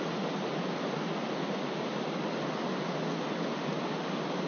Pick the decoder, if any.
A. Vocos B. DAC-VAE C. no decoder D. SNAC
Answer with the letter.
C